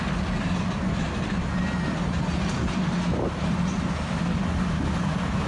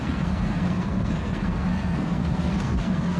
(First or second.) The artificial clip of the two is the second